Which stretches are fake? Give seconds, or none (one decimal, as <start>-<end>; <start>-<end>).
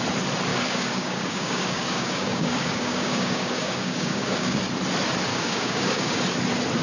0.5-4.6; 5.3-6.2